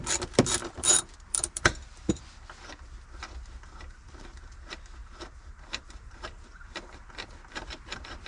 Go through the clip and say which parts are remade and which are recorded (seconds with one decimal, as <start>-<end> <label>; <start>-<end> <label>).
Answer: 0.0-0.6 recorded; 0.6-2.1 remade; 2.1-5.0 recorded; 5.0-8.3 remade